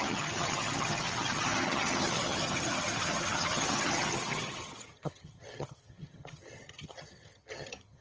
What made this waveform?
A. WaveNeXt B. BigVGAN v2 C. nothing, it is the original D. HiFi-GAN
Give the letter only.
D